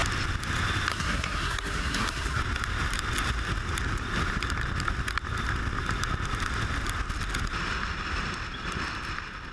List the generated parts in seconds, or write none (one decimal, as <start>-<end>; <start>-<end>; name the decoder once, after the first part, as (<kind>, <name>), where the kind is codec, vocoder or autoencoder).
0.9-2.4 (codec, SNAC)